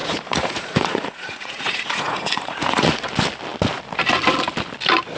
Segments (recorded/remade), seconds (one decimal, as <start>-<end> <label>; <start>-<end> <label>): 0.0-3.1 remade; 3.1-5.2 recorded